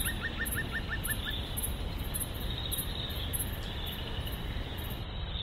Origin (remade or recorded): recorded